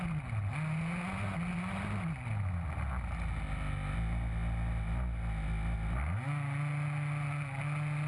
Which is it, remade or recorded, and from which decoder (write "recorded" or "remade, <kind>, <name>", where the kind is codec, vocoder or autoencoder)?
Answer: recorded